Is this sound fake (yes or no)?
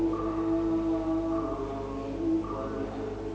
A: no